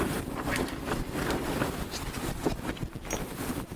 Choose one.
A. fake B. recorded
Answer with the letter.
B